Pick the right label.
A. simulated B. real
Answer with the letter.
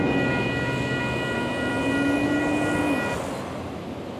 B